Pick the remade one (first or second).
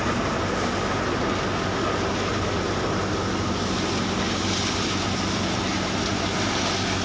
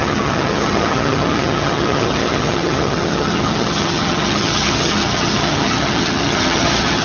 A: second